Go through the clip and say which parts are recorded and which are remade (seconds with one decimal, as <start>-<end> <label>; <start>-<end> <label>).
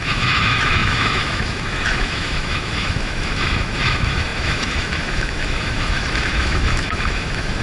0.0-7.6 remade